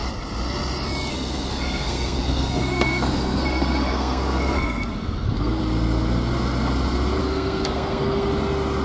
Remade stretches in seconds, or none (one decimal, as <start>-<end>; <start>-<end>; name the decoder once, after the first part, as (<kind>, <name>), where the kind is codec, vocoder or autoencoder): 1.1-5.6 (codec, SNAC); 7.2-8.3